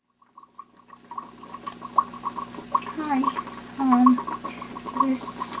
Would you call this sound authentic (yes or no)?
yes